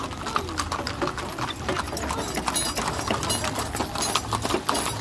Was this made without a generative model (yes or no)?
yes